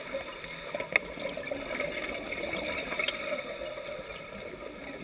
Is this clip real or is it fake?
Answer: real